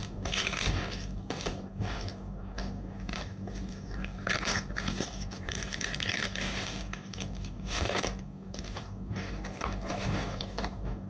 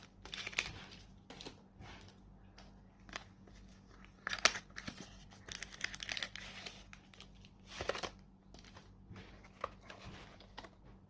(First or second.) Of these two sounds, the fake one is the first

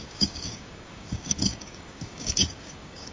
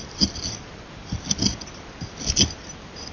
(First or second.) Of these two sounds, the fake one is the first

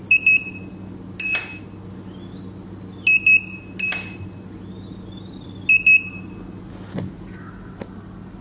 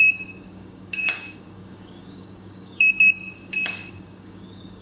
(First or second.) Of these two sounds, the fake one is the second